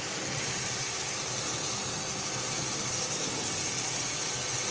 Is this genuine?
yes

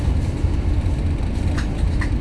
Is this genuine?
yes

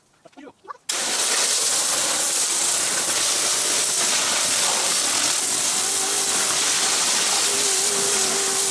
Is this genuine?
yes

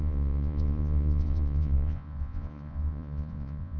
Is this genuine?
no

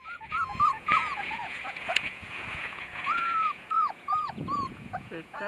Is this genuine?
no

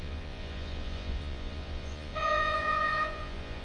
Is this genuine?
no